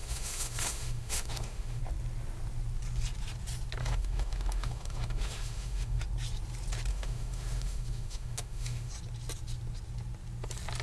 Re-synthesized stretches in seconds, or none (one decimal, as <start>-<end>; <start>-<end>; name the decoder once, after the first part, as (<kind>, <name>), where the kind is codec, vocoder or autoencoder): 0.0-1.8 (autoencoder, DAC-VAE); 3.8-6.0; 6.9-8.9